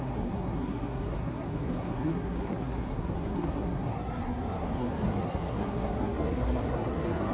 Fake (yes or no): yes